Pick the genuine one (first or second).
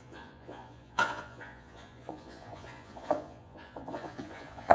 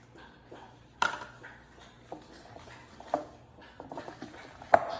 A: second